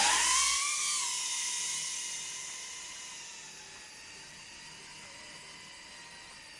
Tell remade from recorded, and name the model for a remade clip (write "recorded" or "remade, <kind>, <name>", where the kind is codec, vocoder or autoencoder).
recorded